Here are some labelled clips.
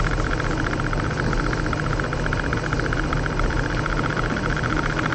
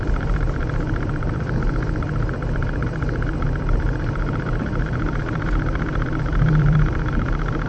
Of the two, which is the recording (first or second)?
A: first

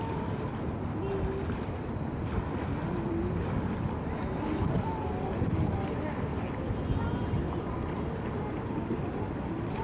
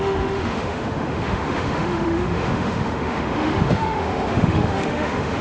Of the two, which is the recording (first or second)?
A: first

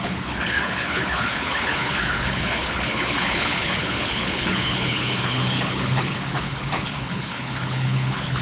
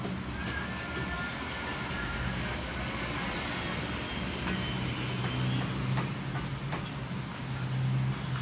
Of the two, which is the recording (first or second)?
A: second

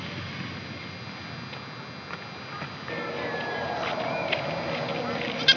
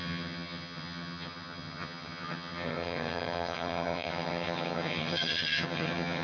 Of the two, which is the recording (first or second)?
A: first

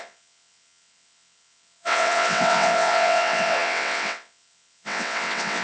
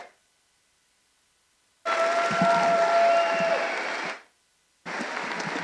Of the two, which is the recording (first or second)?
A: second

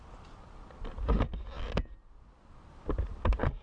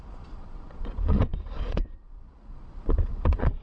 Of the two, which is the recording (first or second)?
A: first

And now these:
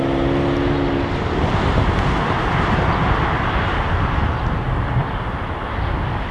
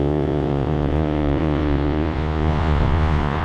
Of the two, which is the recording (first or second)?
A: first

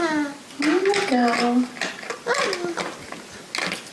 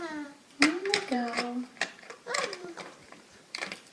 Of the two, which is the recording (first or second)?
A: first